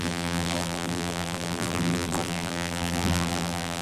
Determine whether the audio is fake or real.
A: fake